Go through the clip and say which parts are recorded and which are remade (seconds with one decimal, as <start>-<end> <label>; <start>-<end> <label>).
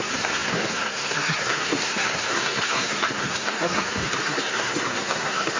0.0-5.6 remade